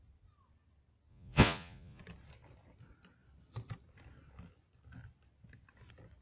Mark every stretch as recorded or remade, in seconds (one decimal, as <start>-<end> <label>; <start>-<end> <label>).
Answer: 0.0-1.1 recorded; 1.1-2.0 remade; 2.0-6.2 recorded